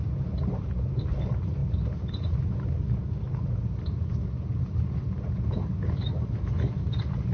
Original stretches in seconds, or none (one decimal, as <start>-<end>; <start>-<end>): 0.0-7.3